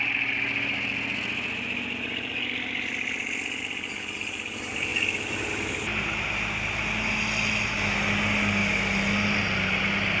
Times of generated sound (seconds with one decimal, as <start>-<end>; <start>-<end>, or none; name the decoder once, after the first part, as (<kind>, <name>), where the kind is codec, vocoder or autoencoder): none